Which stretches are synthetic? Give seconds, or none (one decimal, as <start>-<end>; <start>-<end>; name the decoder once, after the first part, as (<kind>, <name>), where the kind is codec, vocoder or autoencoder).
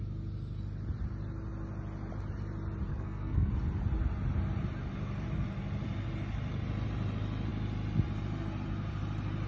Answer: 2.9-3.5 (codec, SNAC)